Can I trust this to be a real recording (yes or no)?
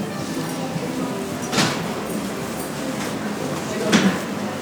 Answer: yes